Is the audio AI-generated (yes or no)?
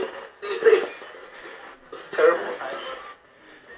no